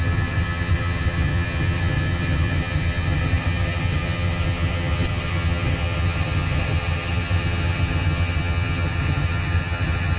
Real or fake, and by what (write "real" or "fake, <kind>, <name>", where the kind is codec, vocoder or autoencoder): fake, vocoder, HiFi-GAN